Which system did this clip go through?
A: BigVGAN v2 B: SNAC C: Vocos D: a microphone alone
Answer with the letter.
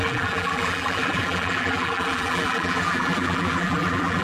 A